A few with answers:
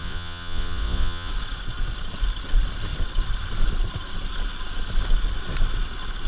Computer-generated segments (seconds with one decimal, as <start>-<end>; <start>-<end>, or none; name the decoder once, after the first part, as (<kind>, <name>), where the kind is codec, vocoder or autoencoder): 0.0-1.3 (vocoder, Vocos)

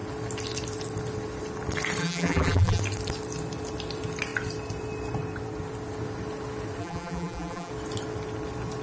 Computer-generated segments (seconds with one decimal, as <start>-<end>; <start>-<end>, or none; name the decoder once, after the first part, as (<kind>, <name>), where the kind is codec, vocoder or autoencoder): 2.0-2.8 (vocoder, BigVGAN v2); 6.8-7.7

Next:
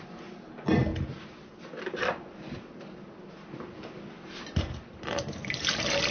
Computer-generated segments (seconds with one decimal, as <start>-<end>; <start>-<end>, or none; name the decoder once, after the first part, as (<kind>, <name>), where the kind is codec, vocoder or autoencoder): none

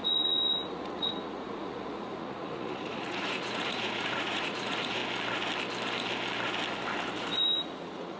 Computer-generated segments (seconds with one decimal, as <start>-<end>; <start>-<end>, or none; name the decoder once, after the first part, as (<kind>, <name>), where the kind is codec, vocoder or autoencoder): 0.0-5.0 (vocoder, Vocos); 7.2-8.2